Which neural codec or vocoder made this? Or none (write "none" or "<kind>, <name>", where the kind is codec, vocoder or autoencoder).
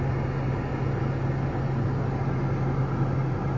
none